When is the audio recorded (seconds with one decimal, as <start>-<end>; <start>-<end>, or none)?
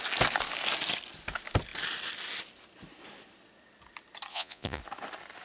0.0-4.3; 4.8-5.4